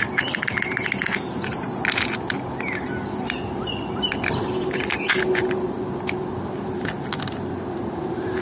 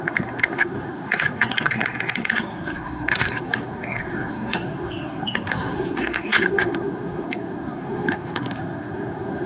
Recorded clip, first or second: first